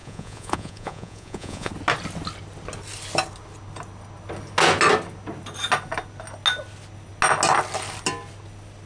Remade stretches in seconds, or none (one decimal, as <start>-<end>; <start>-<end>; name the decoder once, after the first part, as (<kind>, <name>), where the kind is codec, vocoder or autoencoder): 0.0-1.7 (vocoder, Vocos)